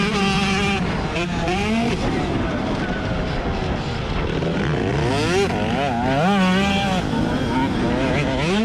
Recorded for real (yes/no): yes